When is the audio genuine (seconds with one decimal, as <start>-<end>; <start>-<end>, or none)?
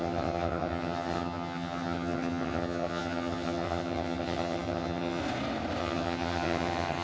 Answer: 5.2-5.8